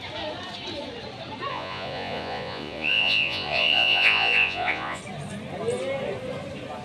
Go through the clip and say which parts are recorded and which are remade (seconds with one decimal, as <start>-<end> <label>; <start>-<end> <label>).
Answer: 0.0-1.5 recorded; 1.5-5.0 remade; 5.0-6.8 recorded